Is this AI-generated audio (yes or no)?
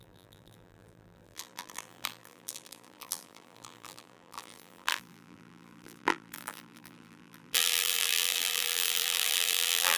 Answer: yes